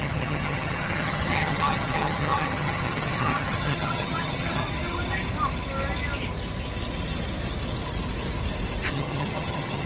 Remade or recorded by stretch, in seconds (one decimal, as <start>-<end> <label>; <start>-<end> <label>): 0.0-4.6 remade; 4.6-8.9 recorded; 8.9-9.9 remade